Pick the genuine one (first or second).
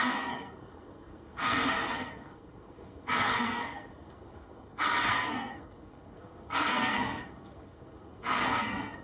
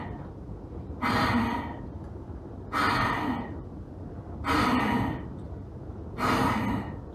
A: second